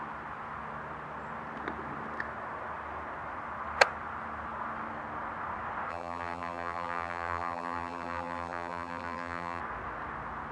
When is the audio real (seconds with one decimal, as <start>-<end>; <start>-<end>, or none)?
0.0-5.9; 9.6-10.5